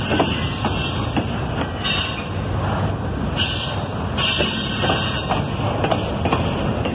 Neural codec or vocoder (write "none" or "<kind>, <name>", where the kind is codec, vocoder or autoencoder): none